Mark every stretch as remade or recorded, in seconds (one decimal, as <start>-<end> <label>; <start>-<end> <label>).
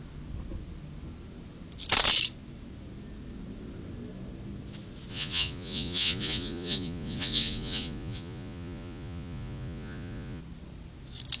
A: 0.0-5.1 recorded; 5.1-10.4 remade; 10.4-11.4 recorded